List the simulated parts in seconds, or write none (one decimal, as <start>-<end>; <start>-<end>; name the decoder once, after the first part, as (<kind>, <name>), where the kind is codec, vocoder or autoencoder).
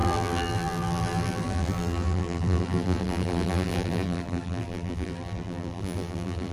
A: 0.0-6.5 (vocoder, BigVGAN v2)